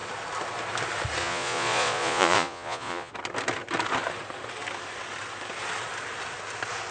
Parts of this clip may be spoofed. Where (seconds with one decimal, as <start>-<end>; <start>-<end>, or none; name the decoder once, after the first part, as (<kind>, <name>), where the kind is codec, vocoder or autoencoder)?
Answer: 1.2-3.1 (vocoder, Vocos)